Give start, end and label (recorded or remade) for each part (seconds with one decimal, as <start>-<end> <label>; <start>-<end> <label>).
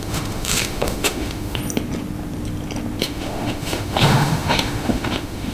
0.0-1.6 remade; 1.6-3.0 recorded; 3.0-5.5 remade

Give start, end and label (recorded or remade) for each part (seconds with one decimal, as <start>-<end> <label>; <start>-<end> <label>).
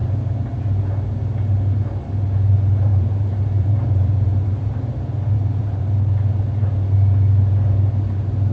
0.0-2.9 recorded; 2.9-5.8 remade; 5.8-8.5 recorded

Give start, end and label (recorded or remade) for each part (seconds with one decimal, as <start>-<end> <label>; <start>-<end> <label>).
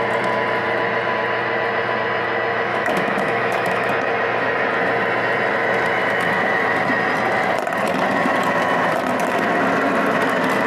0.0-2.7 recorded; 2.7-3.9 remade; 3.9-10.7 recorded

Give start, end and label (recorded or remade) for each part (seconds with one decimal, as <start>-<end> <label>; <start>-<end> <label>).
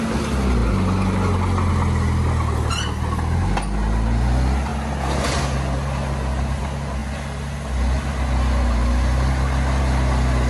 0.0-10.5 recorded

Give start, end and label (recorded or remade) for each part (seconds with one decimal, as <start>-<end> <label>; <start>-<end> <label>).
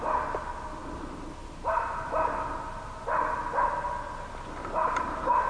0.0-5.5 recorded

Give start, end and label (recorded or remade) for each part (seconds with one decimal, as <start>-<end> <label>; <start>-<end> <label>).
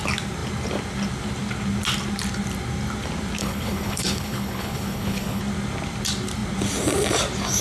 0.0-3.4 recorded; 3.4-5.4 remade; 5.4-7.6 recorded